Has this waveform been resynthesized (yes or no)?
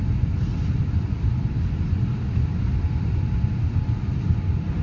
no